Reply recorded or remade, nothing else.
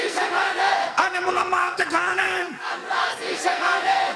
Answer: remade